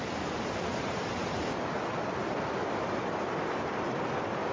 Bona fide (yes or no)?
yes